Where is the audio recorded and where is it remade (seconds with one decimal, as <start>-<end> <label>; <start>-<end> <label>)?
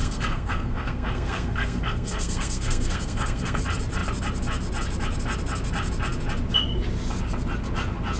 0.0-3.6 remade; 3.6-8.2 recorded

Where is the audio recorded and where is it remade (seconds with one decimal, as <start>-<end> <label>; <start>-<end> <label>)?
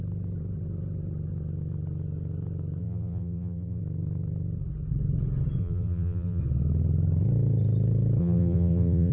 0.0-2.8 recorded; 2.8-3.8 remade; 3.8-5.6 recorded; 5.6-6.4 remade; 6.4-8.2 recorded; 8.2-9.1 remade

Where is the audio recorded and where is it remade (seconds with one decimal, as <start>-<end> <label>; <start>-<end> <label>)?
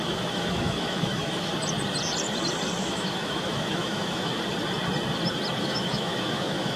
0.0-1.5 remade; 1.5-2.8 recorded; 2.8-4.3 remade; 4.3-5.6 recorded; 5.6-6.8 remade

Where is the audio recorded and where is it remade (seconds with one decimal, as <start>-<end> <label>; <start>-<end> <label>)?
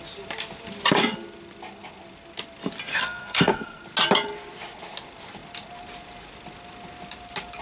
0.0-2.9 recorded; 2.9-3.8 remade; 3.8-7.6 recorded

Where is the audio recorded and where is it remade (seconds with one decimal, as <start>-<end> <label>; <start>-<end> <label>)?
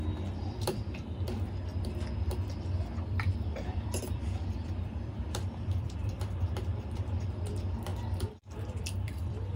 0.0-7.9 remade; 7.9-8.8 recorded; 8.8-9.6 remade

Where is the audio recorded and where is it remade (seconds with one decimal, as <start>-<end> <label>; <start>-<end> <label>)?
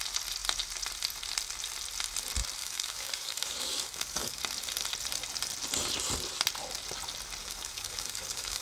0.0-2.6 recorded; 2.6-4.4 remade; 4.4-7.4 recorded; 7.4-8.6 remade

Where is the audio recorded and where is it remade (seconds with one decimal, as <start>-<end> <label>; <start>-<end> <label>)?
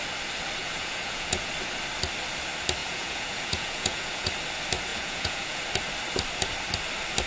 0.0-0.6 recorded; 0.6-1.5 remade; 1.5-2.8 recorded; 2.8-4.3 remade; 4.3-4.9 recorded; 4.9-5.6 remade; 5.6-7.3 recorded